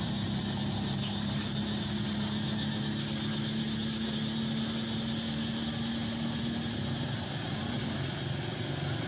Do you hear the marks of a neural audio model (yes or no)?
no